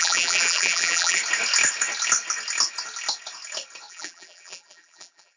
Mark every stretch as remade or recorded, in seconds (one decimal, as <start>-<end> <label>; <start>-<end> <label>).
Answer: 0.0-1.2 remade; 1.2-3.9 recorded; 3.9-5.4 remade